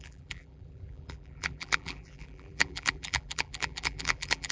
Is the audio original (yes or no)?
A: no